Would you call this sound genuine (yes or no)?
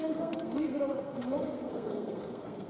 no